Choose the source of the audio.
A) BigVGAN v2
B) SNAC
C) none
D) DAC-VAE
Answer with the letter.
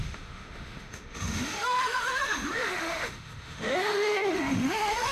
D